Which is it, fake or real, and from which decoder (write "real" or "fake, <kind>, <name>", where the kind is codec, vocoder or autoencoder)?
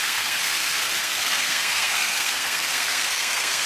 fake, codec, SNAC